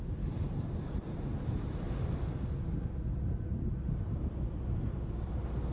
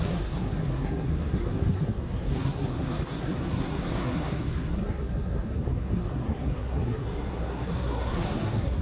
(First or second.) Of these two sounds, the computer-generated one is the second